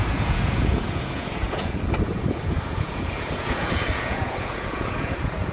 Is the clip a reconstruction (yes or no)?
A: yes